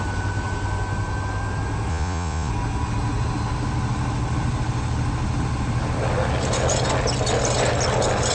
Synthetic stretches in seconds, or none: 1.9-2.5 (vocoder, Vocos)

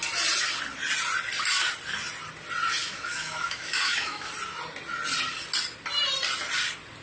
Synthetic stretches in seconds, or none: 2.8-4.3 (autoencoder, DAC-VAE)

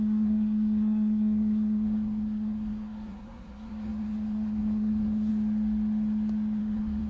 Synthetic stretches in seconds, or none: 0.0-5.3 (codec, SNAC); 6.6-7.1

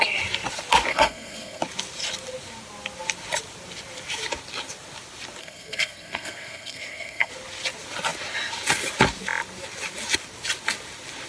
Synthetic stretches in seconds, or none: 0.9-1.6 (codec, SNAC); 5.4-7.3

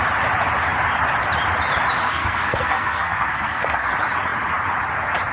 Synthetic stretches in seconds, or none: 2.0-3.9 (codec, SNAC)

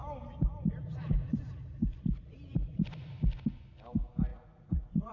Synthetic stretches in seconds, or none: 4.3-5.1 (vocoder, Vocos)

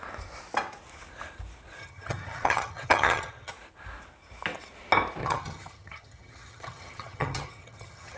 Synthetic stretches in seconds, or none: 1.8-3.5 (vocoder, HiFi-GAN); 5.2-8.2